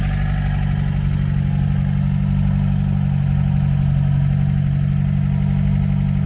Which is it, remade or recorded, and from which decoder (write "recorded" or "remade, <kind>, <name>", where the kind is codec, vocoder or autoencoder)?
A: recorded